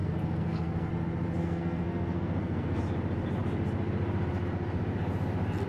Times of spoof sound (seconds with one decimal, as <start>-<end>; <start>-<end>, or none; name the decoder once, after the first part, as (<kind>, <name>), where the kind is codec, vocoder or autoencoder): 0.0-0.9 (codec, SNAC); 1.4-2.8